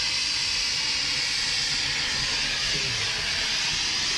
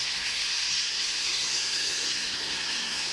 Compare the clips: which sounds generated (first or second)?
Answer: second